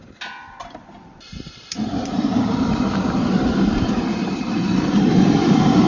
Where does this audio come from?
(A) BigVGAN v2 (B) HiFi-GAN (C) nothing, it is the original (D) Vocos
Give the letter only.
A